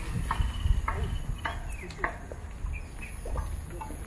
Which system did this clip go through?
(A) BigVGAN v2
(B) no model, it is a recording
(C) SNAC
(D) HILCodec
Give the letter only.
B